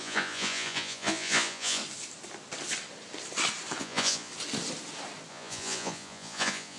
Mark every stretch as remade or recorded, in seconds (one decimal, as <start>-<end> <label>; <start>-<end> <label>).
0.0-1.8 remade; 1.8-3.8 recorded; 3.8-4.3 remade; 4.3-5.3 recorded; 5.3-6.8 remade

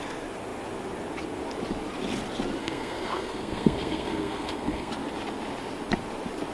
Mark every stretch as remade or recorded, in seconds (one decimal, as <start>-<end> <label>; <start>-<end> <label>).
0.0-2.6 recorded; 2.6-4.9 remade; 4.9-6.5 recorded

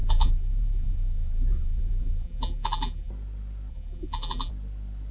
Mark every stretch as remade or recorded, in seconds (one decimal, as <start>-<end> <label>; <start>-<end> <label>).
0.0-3.1 remade; 3.1-3.7 recorded; 3.7-4.5 remade; 4.5-5.1 recorded